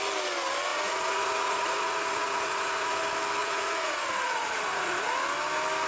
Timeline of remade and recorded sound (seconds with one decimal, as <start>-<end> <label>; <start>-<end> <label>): 0.0-0.7 recorded; 0.7-3.0 remade; 3.0-3.4 recorded; 3.4-5.1 remade; 5.1-5.9 recorded